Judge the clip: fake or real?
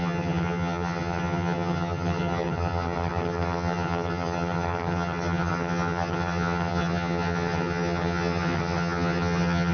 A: fake